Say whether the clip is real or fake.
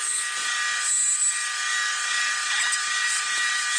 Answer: real